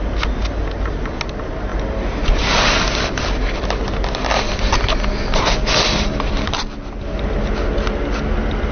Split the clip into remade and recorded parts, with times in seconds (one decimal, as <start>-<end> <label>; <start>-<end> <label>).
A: 0.0-8.7 recorded